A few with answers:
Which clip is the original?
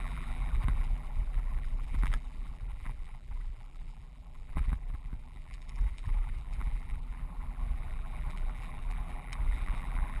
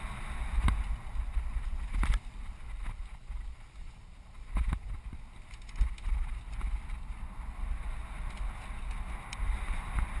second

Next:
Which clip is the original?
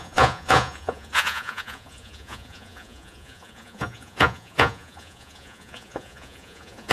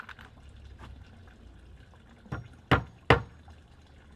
second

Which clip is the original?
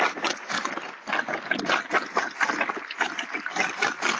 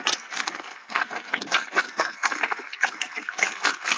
first